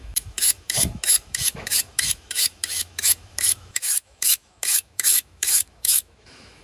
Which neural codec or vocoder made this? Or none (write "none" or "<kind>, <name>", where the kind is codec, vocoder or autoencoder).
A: autoencoder, DAC-VAE